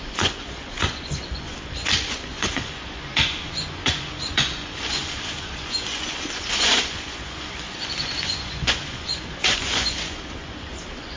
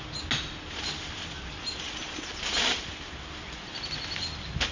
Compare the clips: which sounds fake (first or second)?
first